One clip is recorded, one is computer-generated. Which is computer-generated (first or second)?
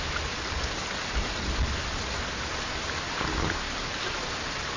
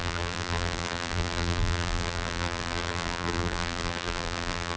second